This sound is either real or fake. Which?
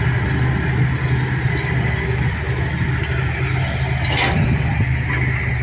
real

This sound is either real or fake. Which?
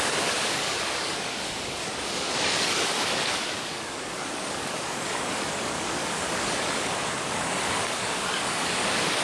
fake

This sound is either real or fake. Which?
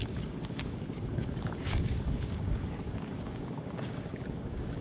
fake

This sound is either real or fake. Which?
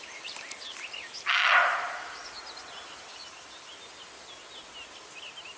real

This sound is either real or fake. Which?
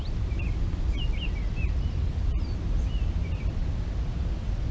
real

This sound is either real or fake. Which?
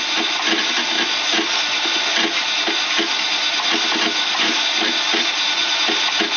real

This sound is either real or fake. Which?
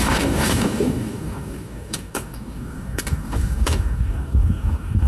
fake